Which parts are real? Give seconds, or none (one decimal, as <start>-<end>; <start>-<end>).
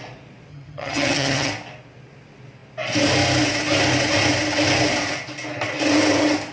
0.0-0.5; 1.5-6.5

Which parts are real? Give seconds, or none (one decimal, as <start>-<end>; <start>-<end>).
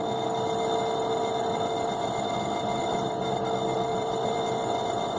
0.0-2.8; 3.4-3.9; 4.4-5.2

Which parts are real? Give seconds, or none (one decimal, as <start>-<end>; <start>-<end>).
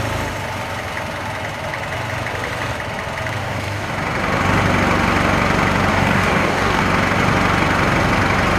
0.0-3.4; 3.9-5.9; 6.8-8.6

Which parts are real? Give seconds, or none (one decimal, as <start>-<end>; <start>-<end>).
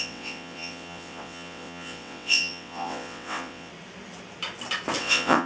3.7-5.0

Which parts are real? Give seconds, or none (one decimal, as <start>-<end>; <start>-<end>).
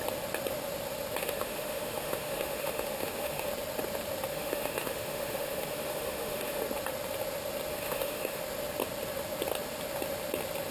0.0-1.2; 3.5-4.3; 6.6-7.7; 8.4-10.7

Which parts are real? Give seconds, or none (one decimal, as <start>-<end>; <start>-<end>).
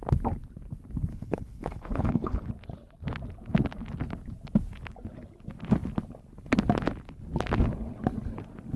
0.0-1.1; 2.5-8.8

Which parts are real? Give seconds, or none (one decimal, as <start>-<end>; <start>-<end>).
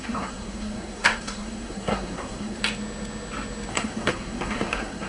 2.6-3.7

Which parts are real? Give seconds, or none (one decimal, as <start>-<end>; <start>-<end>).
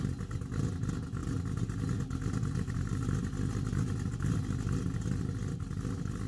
0.0-6.3